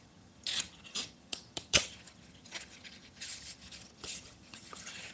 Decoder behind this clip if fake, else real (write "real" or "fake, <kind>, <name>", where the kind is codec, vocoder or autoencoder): fake, vocoder, HiFi-GAN